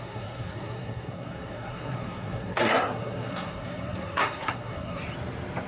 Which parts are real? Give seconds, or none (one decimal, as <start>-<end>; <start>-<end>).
5.0-5.7